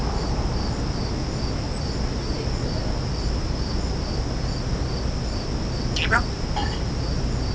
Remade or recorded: recorded